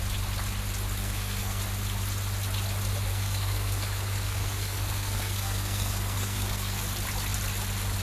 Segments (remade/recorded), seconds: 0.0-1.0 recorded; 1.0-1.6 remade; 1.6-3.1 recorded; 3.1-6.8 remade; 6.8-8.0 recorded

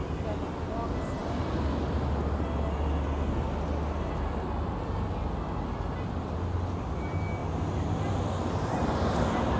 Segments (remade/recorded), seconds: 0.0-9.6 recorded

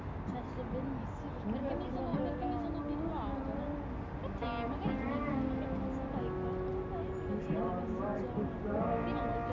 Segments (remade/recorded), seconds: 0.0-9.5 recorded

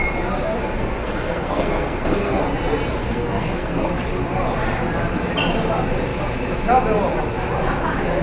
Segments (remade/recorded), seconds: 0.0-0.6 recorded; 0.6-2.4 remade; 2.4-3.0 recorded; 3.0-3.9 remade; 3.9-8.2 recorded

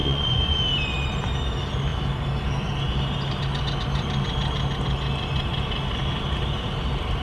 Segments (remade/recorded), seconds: 0.0-0.6 remade; 0.6-7.2 recorded

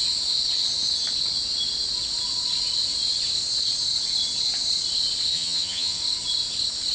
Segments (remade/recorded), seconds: 0.0-5.3 recorded; 5.3-6.0 remade; 6.0-6.9 recorded